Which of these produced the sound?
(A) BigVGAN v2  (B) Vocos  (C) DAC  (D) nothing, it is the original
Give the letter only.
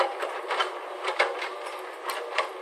D